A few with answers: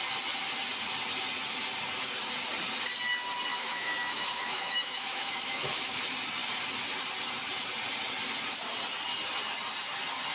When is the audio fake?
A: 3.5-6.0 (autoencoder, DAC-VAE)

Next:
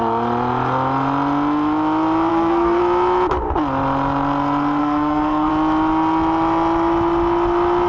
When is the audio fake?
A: 2.3-2.8 (codec, SNAC); 4.8-5.5

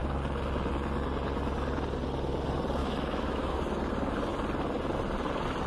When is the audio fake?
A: 2.8-3.6 (autoencoder, DAC-VAE)

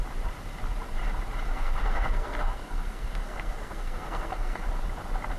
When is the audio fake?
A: 1.5-4.7 (codec, SNAC)

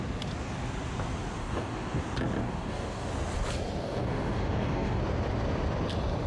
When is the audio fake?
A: 1.4-2.0 (codec, DAC); 2.4-3.1; 3.8-5.0

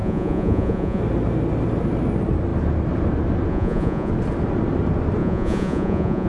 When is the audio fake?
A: 0.0-1.0 (vocoder, Vocos); 3.5-4.1; 5.2-6.3

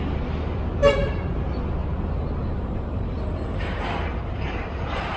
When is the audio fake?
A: 0.8-1.4 (vocoder, BigVGAN v2); 1.8-5.2